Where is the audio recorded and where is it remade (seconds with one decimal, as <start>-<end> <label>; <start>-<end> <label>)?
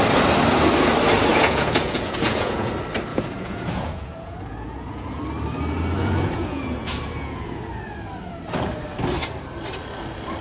0.0-1.3 recorded; 1.3-2.7 remade; 2.7-3.1 recorded; 3.1-5.2 remade; 5.2-6.0 recorded; 6.0-7.7 remade; 7.7-10.4 recorded